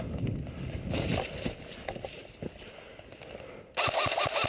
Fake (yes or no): no